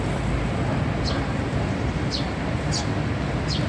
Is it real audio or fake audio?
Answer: real